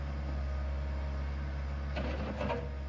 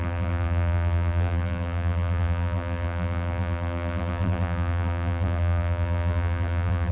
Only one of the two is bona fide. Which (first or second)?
first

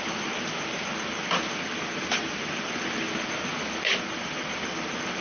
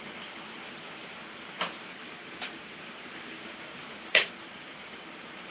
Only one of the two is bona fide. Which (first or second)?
first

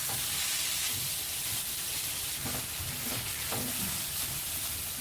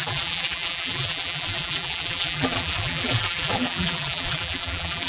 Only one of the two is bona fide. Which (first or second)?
first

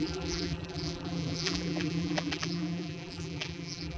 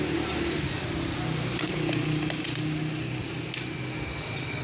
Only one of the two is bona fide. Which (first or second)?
second